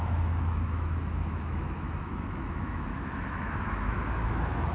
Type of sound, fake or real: fake